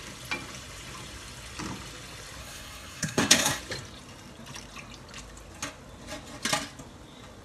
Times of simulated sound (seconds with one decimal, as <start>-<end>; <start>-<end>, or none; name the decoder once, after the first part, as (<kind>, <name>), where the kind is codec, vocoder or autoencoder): 2.4-3.6 (codec, SNAC)